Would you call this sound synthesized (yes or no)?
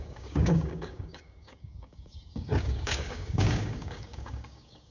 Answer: yes